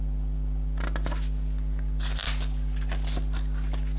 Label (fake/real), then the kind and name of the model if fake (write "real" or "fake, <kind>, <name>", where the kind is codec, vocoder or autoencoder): real